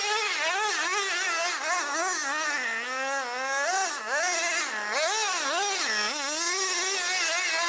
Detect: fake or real real